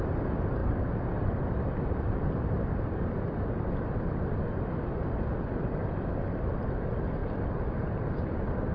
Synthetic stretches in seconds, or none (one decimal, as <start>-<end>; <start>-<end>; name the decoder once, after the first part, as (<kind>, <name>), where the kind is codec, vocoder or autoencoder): 0.6-4.9 (vocoder, BigVGAN v2); 7.2-8.7